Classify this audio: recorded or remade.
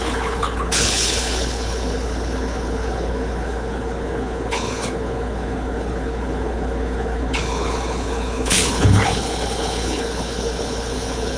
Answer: remade